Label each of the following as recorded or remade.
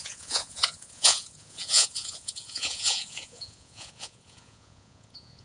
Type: remade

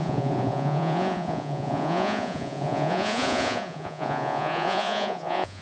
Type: remade